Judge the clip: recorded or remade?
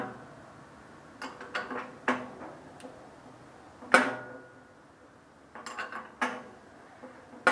recorded